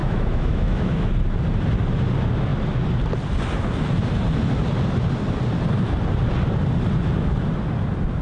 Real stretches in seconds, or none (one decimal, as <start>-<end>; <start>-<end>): 1.1-8.2

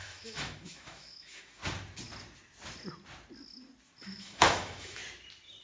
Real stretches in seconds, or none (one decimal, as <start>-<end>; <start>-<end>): 1.6-4.0; 5.0-5.6

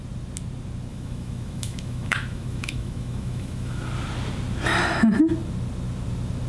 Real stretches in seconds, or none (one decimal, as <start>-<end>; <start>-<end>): 0.0-0.9; 3.8-6.5